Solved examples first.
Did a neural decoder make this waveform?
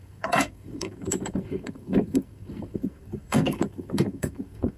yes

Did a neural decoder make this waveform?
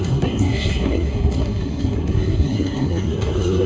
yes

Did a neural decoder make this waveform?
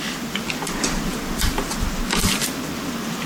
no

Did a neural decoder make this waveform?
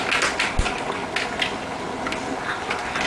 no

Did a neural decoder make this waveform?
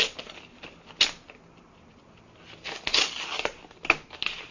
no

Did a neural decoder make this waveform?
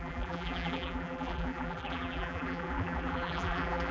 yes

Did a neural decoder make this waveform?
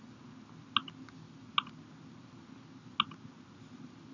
no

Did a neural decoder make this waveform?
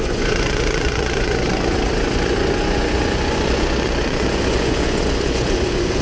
yes